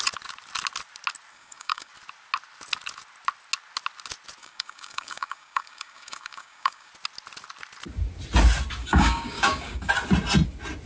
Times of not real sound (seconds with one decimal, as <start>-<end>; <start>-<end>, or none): 1.3-1.9; 4.4-6.9; 8.8-9.9